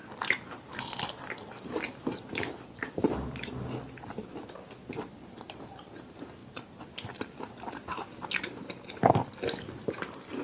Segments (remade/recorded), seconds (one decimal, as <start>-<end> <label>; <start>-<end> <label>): 0.0-10.4 recorded